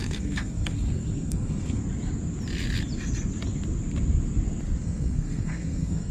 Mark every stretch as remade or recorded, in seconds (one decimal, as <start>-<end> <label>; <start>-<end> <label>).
0.0-1.8 remade; 1.8-4.8 recorded; 4.8-6.1 remade